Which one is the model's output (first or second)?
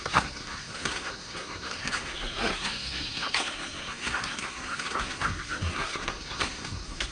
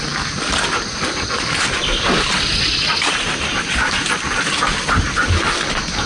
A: first